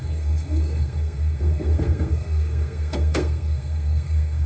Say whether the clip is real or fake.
fake